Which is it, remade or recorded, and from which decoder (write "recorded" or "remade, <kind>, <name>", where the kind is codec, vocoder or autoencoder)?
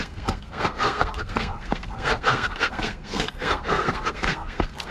remade, codec, SNAC